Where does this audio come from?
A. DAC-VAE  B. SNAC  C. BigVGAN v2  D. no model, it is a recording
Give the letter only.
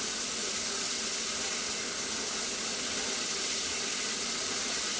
D